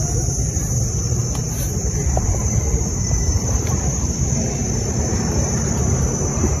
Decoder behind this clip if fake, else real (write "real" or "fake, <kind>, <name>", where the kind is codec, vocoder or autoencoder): fake, vocoder, BigVGAN v2